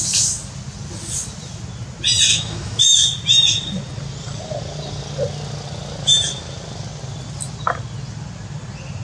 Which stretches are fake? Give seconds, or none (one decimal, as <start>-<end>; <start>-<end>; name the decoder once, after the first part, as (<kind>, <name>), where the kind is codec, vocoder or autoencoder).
2.3-2.8 (autoencoder, DAC-VAE)